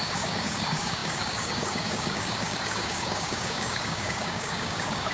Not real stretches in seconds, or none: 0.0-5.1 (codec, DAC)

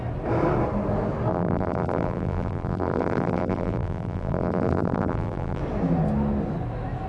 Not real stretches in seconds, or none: 1.3-5.6 (vocoder, BigVGAN v2)

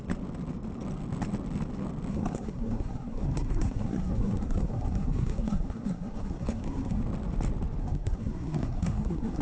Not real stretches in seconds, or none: 2.1-7.0 (codec, SNAC); 7.8-9.4

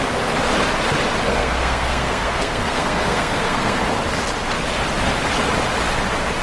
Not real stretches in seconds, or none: 1.3-3.8 (codec, SNAC)

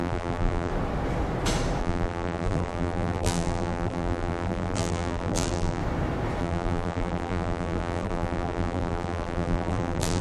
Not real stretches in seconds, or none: 0.0-0.7 (vocoder, BigVGAN v2); 1.8-5.8; 6.4-10.2

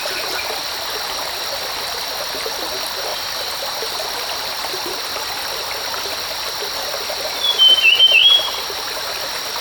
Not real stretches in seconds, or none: 8.2-9.2 (vocoder, BigVGAN v2)

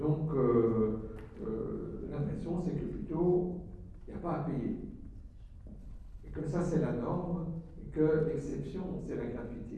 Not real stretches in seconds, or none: 5.8-6.4 (codec, HILCodec)